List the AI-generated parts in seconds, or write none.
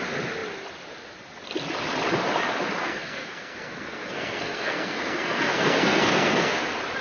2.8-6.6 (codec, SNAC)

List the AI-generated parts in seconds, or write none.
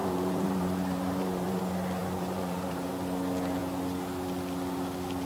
0.0-1.6 (vocoder, BigVGAN v2); 2.0-2.9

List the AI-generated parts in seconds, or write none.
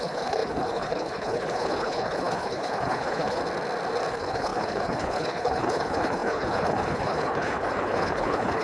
0.0-3.4 (codec, HILCodec); 4.1-8.6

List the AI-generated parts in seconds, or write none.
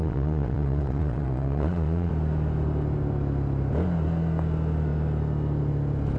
0.0-2.1 (vocoder, Vocos)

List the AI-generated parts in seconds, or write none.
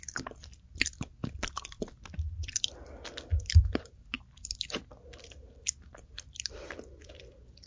none